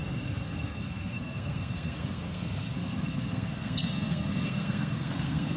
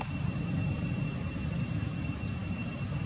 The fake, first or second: first